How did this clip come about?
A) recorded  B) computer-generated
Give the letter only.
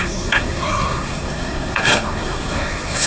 B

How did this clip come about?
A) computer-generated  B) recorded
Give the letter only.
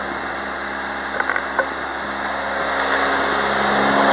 B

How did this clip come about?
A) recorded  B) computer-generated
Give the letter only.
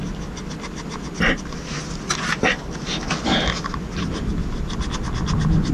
A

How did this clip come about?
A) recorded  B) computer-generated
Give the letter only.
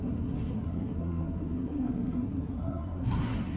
B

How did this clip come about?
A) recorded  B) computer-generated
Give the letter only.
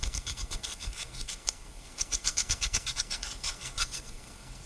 B